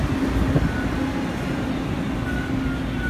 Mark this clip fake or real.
real